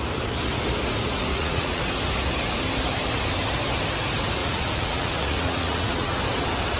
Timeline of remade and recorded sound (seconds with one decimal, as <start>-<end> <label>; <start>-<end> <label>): 0.0-1.3 recorded; 1.3-1.8 remade; 1.8-4.4 recorded; 4.4-6.2 remade; 6.2-6.8 recorded